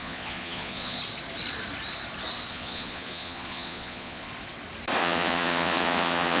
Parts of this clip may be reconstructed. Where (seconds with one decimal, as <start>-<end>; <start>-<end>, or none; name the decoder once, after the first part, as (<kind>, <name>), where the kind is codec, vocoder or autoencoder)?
0.0-1.0 (vocoder, Vocos); 2.5-4.3; 5.0-6.4